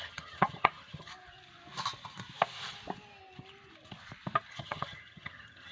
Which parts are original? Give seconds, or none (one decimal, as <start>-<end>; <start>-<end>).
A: 1.1-4.5